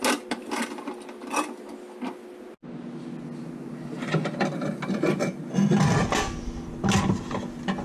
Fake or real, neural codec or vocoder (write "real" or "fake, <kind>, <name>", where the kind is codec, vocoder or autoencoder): real